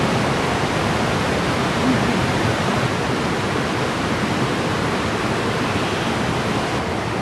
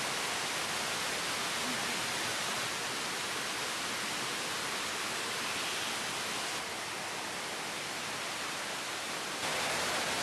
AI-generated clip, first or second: first